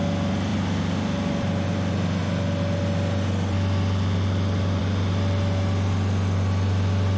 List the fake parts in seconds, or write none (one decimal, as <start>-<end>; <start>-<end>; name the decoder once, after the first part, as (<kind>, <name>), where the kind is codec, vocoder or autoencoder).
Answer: none